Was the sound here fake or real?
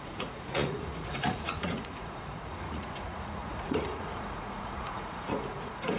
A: fake